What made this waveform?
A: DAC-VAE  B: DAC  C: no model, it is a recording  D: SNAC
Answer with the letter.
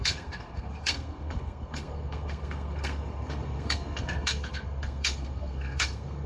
D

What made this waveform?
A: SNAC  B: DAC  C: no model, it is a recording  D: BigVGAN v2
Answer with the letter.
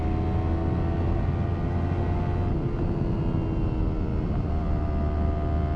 C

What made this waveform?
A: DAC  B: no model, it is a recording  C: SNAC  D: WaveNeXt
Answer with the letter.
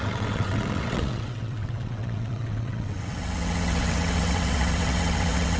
D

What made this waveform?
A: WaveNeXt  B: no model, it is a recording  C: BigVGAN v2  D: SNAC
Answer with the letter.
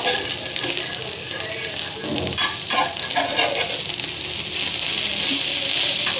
B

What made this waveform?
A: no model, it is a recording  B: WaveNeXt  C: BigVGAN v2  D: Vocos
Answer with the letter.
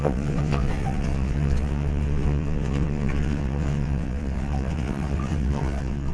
B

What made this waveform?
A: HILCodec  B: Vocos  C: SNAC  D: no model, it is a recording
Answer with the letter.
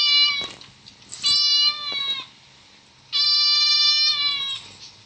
D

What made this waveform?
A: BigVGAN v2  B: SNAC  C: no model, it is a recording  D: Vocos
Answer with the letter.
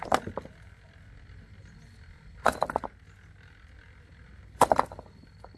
C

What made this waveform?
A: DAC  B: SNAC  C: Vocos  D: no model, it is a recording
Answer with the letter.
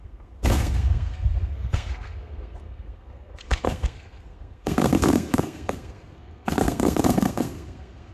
B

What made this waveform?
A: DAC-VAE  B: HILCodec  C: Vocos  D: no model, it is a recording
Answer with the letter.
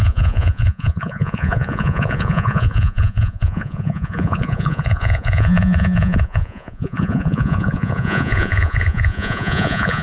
C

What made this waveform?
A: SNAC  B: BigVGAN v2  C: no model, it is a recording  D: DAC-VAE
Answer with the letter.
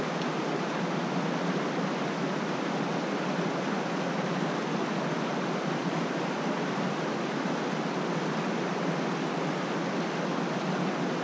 C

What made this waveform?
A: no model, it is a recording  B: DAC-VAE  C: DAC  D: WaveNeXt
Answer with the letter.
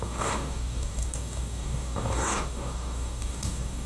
C